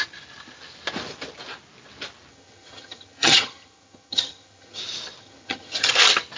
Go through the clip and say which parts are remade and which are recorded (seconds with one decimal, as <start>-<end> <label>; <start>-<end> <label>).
0.0-2.3 recorded; 2.3-4.8 remade; 4.8-5.2 recorded; 5.2-5.9 remade; 5.9-6.4 recorded